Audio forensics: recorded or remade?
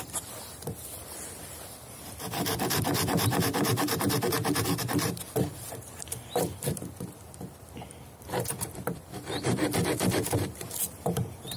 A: remade